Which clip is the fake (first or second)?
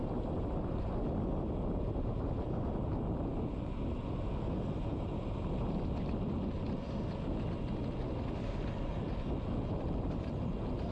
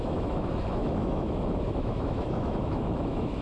second